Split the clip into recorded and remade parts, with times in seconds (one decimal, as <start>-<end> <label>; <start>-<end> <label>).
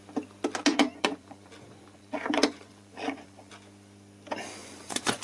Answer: 0.0-0.7 recorded; 0.7-3.5 remade; 3.5-4.6 recorded; 4.6-5.2 remade